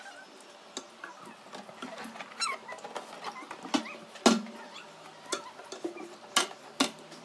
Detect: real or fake real